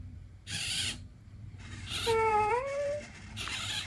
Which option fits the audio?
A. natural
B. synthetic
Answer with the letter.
B